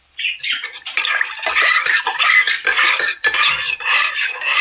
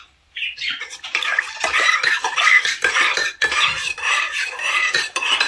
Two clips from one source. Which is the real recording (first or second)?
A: first